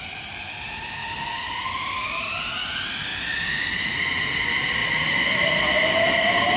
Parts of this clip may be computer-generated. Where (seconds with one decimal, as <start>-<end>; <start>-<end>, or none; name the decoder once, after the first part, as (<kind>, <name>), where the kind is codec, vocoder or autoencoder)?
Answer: 1.0-2.4 (vocoder, BigVGAN v2)